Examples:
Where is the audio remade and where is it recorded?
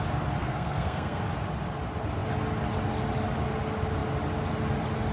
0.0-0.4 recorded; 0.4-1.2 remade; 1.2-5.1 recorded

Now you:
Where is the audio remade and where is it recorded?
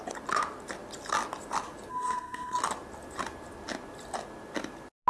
0.0-1.9 recorded; 1.9-2.6 remade; 2.6-5.1 recorded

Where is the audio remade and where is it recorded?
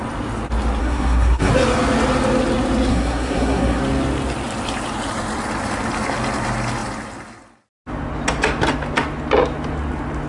0.0-0.8 recorded; 0.8-1.5 remade; 1.5-2.9 recorded; 2.9-3.8 remade; 3.8-10.3 recorded